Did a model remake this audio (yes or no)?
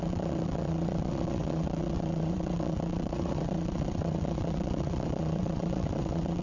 yes